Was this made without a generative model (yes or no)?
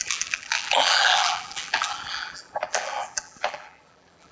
no